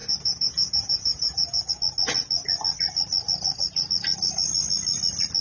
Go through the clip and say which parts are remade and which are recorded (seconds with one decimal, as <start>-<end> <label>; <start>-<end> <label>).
0.0-1.7 remade; 1.7-5.4 recorded